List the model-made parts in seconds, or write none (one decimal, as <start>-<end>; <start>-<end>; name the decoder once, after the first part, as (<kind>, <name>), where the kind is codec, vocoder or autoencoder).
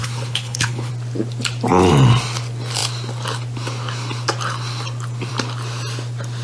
0.0-0.9 (codec, HILCodec)